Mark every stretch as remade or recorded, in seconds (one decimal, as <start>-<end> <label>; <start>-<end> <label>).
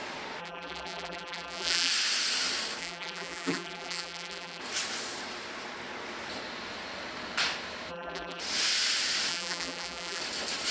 0.0-0.4 recorded; 0.4-1.9 remade; 1.9-2.8 recorded; 2.8-4.6 remade; 4.6-7.9 recorded; 7.9-8.4 remade; 8.4-9.3 recorded; 9.3-10.2 remade; 10.2-10.7 recorded